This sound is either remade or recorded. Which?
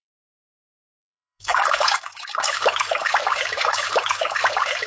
remade